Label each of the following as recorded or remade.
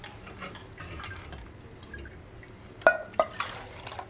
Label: recorded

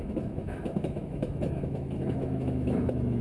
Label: remade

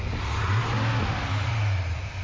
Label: recorded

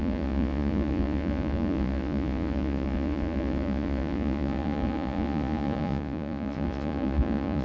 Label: remade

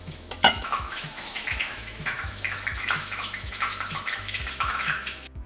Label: remade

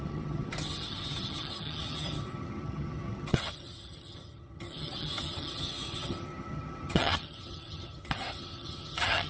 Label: remade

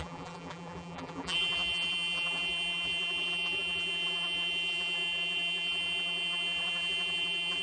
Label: remade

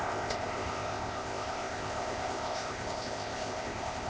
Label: remade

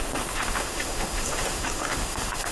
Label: remade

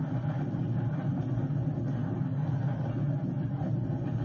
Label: recorded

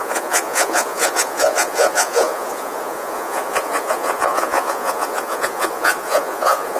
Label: remade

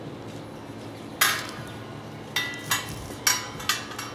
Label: recorded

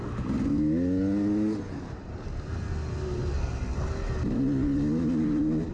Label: recorded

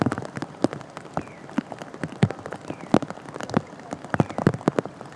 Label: recorded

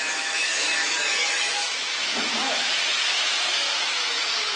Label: remade